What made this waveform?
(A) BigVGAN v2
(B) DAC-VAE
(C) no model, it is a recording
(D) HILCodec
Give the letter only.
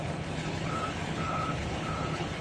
D